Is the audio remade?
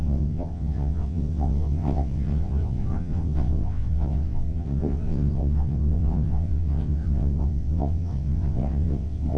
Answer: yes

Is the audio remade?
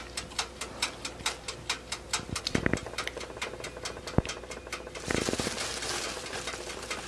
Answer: no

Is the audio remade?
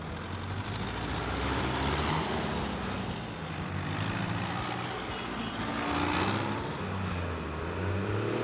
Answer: no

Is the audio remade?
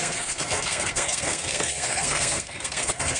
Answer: yes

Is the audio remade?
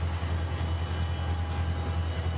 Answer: no